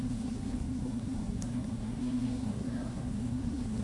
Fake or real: fake